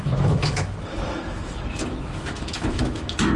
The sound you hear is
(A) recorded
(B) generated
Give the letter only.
B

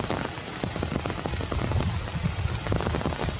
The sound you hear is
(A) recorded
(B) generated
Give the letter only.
A